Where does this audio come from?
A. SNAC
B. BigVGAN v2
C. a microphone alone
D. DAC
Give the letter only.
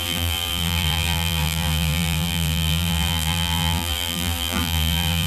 B